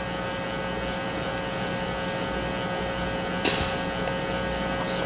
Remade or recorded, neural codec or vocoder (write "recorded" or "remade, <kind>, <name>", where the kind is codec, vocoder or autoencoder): recorded